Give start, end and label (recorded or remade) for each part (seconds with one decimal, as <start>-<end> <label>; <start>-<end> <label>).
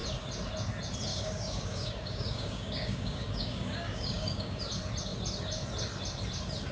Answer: 0.0-1.1 recorded; 1.1-4.6 remade; 4.6-6.7 recorded